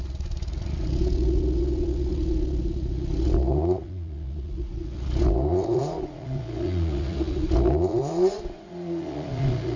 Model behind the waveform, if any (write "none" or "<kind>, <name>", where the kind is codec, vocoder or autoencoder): vocoder, Vocos